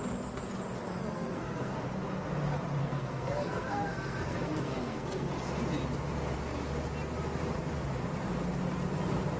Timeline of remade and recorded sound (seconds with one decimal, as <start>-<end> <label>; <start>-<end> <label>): 0.0-1.0 recorded; 1.0-1.8 remade; 1.8-2.8 recorded; 2.8-5.3 remade; 5.3-9.4 recorded